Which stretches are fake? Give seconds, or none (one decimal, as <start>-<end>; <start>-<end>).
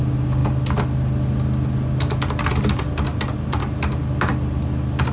none